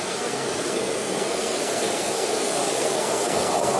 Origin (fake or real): fake